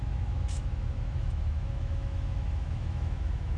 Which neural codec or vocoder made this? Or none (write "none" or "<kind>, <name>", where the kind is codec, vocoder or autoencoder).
autoencoder, DAC-VAE